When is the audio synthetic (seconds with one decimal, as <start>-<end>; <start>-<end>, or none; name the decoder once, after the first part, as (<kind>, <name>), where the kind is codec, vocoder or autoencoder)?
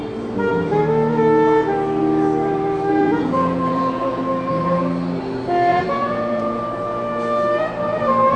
3.0-4.2 (vocoder, Vocos); 5.7-6.6